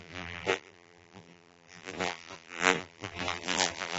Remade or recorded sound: remade